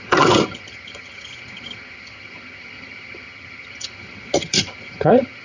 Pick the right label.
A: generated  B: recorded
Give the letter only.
A